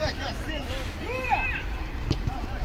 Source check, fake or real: real